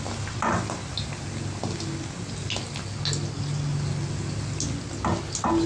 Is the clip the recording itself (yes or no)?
yes